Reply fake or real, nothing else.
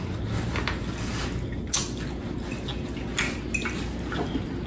real